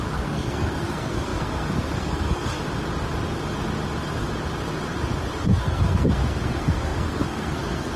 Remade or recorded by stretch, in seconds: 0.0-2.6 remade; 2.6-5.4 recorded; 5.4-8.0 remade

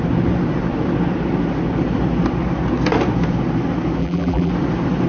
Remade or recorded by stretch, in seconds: 0.0-4.0 recorded; 4.0-4.5 remade; 4.5-5.1 recorded

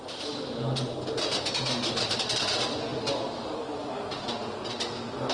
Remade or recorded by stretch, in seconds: 0.0-5.3 recorded

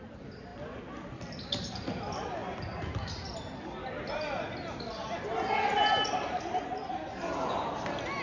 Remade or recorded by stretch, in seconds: 0.0-8.2 recorded

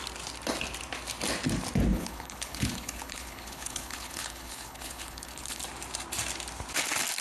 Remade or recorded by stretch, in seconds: 0.0-1.9 recorded; 1.9-5.6 remade; 5.6-7.2 recorded